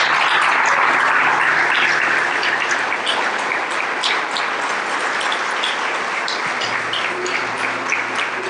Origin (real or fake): real